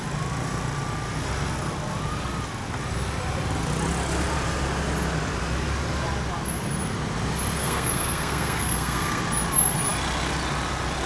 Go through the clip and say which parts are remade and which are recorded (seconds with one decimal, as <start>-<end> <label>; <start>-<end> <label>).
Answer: 0.0-7.6 recorded; 7.6-9.2 remade; 9.2-11.1 recorded